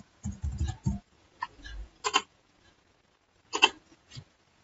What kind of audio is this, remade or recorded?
remade